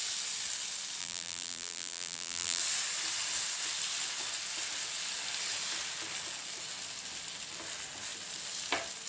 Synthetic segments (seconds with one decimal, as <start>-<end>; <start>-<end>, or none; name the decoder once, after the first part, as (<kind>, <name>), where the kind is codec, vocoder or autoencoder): 1.0-2.6 (vocoder, BigVGAN v2)